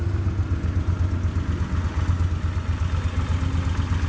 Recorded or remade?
recorded